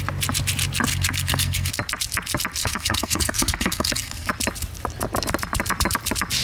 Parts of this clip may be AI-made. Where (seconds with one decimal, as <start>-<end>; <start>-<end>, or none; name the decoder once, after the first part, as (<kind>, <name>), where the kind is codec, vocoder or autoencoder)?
0.9-1.7 (codec, SNAC); 2.6-4.3